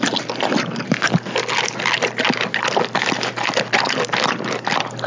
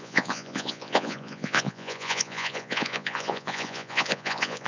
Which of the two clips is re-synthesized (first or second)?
second